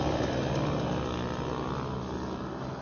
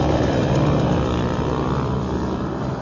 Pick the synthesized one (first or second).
second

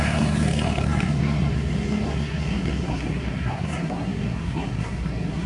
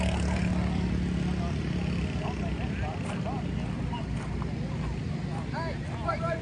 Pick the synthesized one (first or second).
first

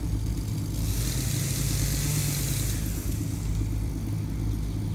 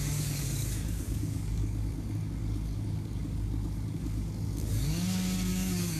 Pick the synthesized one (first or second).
second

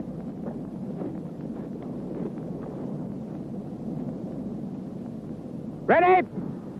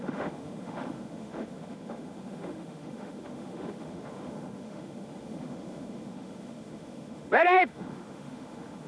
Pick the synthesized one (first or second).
second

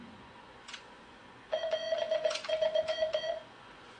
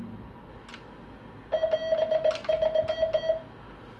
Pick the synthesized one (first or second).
first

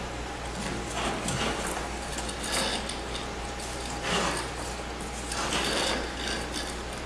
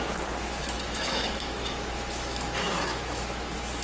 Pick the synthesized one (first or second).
second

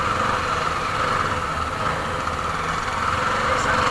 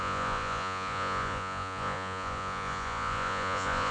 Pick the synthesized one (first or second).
second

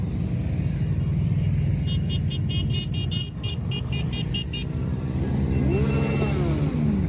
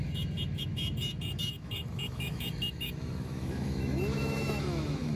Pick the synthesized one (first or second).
second